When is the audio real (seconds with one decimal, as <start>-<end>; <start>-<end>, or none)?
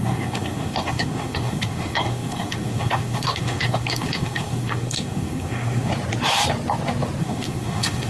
5.9-7.2